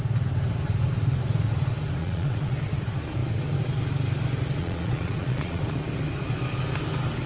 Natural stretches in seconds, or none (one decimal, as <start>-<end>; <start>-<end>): 0.0-2.0; 2.5-4.6; 5.6-7.3